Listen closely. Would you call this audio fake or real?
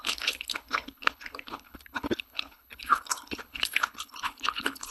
fake